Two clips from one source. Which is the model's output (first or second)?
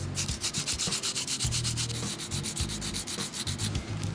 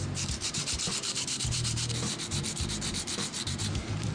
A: second